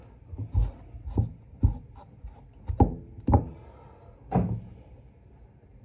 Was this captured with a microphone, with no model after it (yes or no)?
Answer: yes